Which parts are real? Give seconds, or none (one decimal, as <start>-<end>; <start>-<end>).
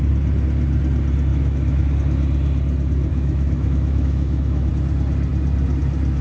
0.0-1.3; 1.9-3.1; 4.7-6.2